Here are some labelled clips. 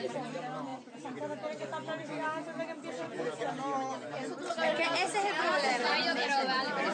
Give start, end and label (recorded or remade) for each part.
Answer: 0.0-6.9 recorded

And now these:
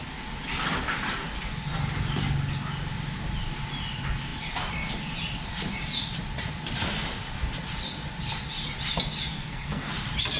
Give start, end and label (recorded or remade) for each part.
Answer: 0.0-9.3 recorded; 9.3-9.9 remade; 9.9-10.4 recorded

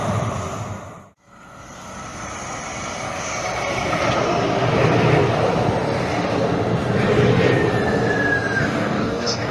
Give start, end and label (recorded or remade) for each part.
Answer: 0.0-8.6 recorded; 8.6-9.5 remade

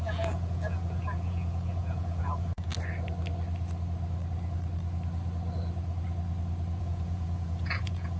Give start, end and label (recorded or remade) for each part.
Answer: 0.0-2.7 remade; 2.7-6.8 recorded; 6.8-8.2 remade

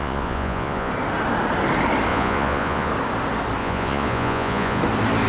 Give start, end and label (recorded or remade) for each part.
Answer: 0.0-0.9 remade; 0.9-2.1 recorded; 2.1-2.9 remade; 2.9-3.6 recorded; 3.6-4.8 remade; 4.8-5.3 recorded